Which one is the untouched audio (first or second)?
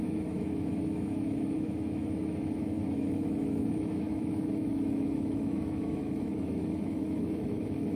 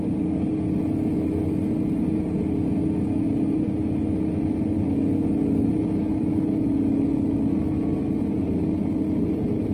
second